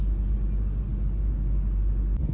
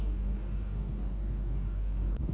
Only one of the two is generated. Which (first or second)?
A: second